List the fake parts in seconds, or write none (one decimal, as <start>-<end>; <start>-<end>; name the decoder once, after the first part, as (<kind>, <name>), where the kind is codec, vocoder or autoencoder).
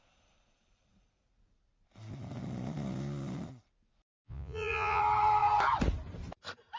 4.2-5.0 (vocoder, Vocos)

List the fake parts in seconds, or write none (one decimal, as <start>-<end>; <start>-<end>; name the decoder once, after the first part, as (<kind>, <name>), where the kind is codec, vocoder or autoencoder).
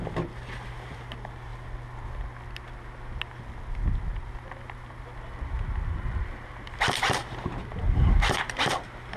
7.2-8.7 (vocoder, BigVGAN v2)